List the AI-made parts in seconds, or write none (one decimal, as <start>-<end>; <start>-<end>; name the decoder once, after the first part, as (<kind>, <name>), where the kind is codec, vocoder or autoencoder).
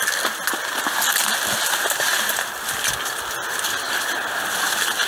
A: none